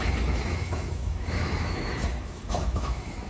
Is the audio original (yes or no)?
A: no